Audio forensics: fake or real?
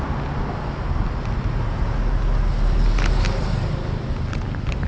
real